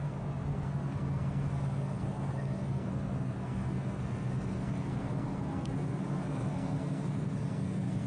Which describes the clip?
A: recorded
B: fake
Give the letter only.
B